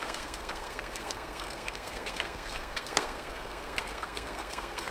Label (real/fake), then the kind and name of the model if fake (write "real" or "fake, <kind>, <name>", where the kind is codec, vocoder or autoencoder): fake, codec, SNAC